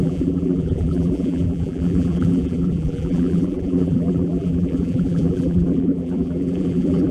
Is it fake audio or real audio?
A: fake